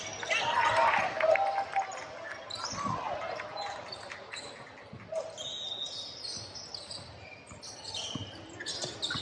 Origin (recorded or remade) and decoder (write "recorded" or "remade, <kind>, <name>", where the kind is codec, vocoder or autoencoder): recorded